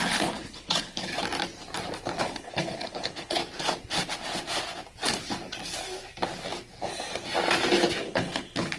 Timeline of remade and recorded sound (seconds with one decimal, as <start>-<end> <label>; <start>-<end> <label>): 0.0-1.1 remade; 1.1-2.2 recorded; 2.2-3.4 remade; 3.4-8.0 recorded; 8.0-8.8 remade